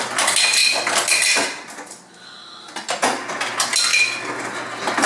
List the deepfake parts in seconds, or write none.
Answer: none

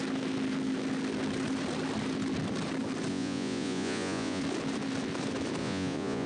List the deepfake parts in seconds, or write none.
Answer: 3.1-4.4 (vocoder, Vocos); 5.6-6.3

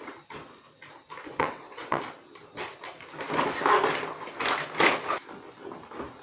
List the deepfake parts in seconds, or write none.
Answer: 1.3-2.0 (vocoder, WaveNeXt)

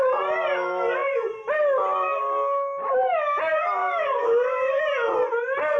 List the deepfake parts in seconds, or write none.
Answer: 3.8-4.8 (autoencoder, DAC-VAE)